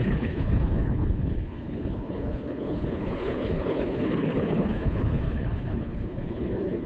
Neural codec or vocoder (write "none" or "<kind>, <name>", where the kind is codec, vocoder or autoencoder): codec, HILCodec